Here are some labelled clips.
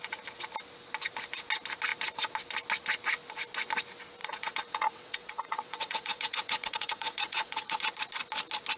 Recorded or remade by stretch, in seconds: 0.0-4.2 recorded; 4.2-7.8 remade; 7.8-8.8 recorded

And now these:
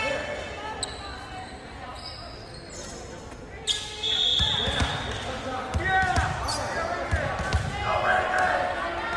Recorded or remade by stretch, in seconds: 0.0-9.2 recorded

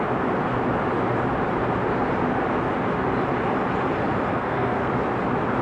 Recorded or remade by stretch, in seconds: 0.0-4.3 recorded; 4.3-4.9 remade; 4.9-5.6 recorded

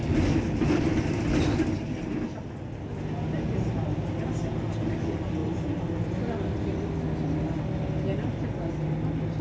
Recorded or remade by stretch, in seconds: 0.0-9.4 recorded